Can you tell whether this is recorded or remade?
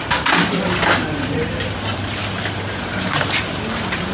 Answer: recorded